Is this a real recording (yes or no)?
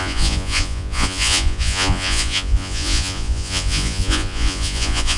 no